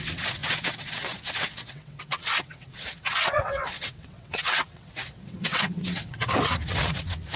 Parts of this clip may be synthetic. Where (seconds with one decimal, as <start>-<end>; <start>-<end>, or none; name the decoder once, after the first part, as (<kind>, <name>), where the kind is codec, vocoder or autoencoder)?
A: 0.0-7.4 (vocoder, WaveNeXt)